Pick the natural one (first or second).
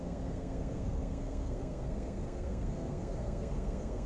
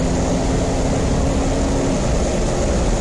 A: second